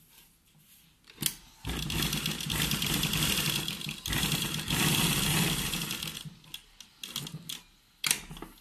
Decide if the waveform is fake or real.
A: real